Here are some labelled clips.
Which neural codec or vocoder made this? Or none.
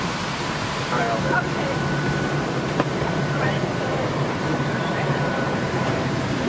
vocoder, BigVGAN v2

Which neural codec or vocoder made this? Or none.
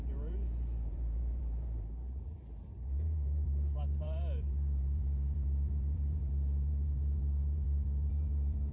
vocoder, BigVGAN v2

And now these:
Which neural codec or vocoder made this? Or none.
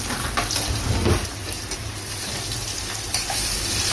none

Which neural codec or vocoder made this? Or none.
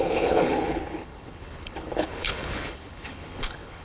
codec, HILCodec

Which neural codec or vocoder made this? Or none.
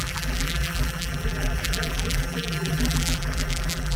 vocoder, BigVGAN v2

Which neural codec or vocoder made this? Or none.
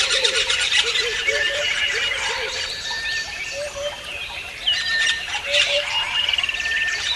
vocoder, BigVGAN v2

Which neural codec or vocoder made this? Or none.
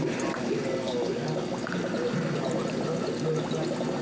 none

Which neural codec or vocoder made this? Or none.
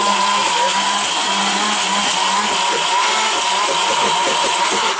none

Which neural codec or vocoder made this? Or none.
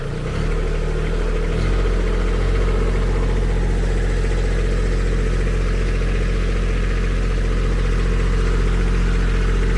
none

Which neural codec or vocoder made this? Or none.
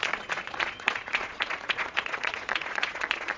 vocoder, Vocos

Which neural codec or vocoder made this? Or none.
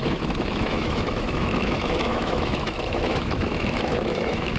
autoencoder, DAC-VAE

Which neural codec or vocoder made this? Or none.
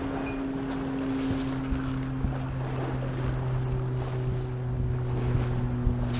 none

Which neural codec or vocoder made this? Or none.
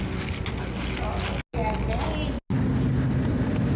none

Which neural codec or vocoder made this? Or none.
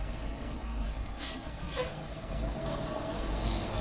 codec, SNAC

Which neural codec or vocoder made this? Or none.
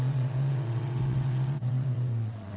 vocoder, WaveNeXt